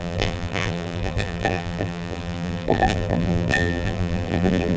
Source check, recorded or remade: remade